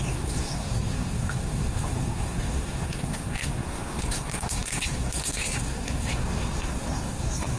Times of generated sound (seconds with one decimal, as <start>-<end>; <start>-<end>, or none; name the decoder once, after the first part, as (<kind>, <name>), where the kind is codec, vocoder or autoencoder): 0.0-7.6 (codec, SNAC)